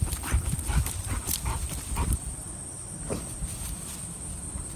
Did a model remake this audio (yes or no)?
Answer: yes